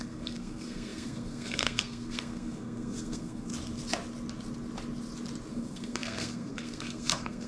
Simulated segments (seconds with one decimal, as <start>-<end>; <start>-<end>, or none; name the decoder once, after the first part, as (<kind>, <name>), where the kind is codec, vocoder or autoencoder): 0.0-3.5 (codec, SNAC); 5.5-7.5